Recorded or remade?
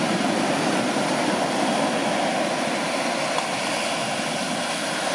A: recorded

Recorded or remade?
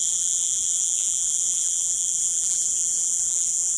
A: remade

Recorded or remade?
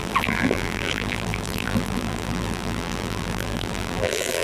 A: remade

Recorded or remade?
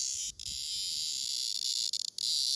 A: recorded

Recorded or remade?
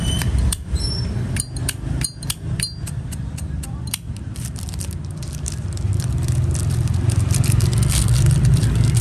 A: remade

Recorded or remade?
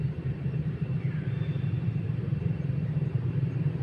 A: remade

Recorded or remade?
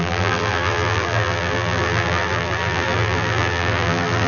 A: remade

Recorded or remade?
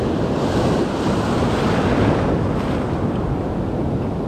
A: recorded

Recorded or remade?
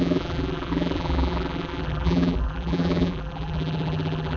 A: remade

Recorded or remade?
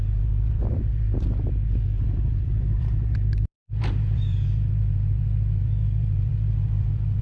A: remade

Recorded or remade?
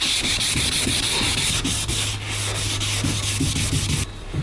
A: recorded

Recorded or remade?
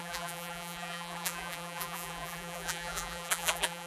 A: remade